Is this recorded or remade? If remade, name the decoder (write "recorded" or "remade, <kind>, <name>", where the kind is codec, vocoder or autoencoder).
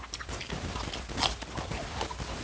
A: recorded